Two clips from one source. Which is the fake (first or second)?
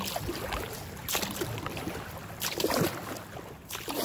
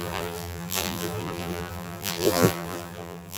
second